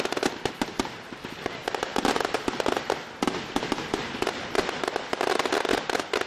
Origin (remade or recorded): remade